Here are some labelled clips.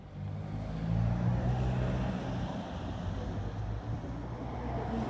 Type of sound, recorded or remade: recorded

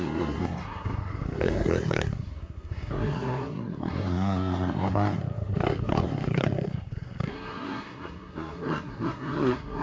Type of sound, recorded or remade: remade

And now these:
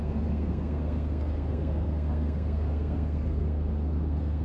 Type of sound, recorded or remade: remade